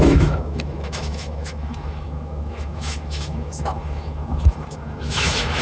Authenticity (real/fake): fake